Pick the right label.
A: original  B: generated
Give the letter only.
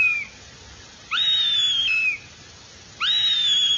A